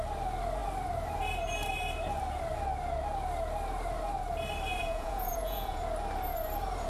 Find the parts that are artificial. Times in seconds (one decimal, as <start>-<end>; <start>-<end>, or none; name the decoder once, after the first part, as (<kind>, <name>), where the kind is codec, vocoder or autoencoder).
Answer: 4.8-5.8 (vocoder, Vocos)